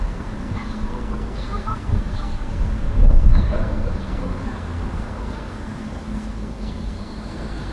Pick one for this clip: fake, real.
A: fake